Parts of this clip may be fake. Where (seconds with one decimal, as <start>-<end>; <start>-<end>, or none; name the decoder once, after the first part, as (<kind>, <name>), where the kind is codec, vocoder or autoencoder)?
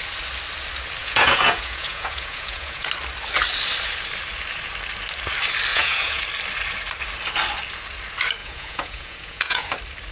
1.0-2.9 (vocoder, Vocos); 5.7-6.2; 8.4-9.7